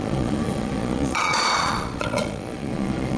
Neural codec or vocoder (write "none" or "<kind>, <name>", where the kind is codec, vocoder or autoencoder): vocoder, Vocos